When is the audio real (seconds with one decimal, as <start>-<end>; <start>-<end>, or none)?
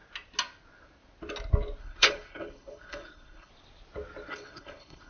0.0-1.8; 3.5-4.3